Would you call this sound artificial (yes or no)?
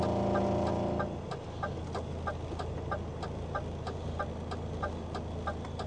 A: no